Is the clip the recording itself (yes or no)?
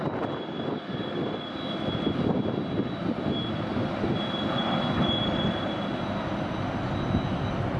yes